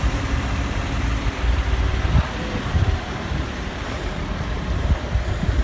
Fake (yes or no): yes